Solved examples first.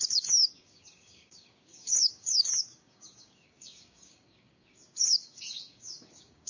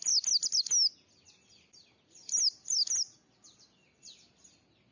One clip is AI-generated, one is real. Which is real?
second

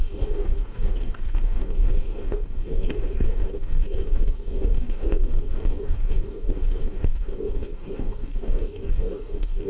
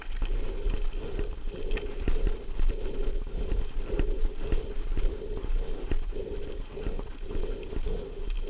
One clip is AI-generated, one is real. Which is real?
second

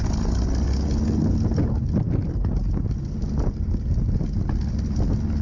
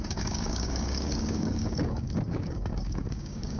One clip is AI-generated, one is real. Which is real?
first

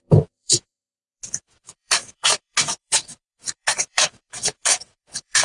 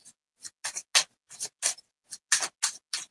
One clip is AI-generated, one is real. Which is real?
second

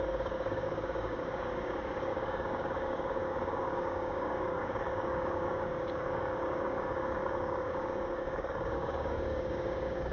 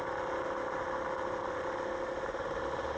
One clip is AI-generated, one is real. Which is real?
second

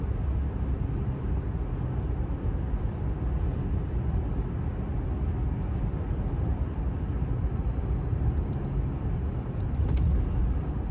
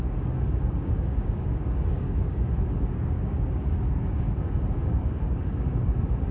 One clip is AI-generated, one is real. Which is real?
first